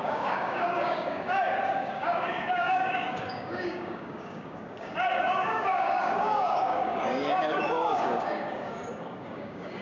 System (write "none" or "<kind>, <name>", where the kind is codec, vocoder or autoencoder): codec, DAC